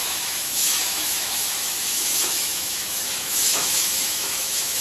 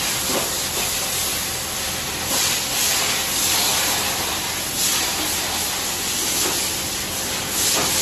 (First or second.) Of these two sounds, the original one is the second